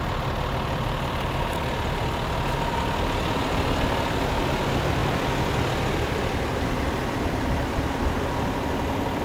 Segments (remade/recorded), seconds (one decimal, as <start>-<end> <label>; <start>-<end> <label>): 0.0-9.2 recorded